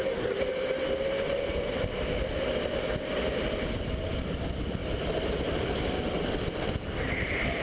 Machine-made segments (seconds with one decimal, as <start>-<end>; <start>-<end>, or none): none